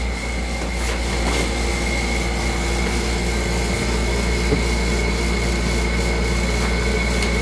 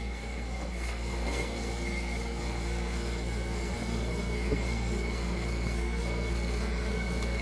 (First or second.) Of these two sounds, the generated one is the second